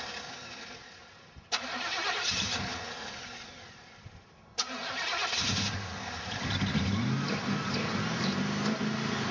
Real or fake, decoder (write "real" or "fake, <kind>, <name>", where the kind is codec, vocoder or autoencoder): real